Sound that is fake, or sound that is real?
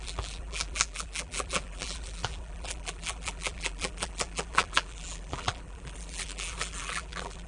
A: fake